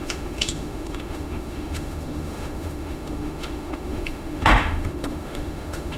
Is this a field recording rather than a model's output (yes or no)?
no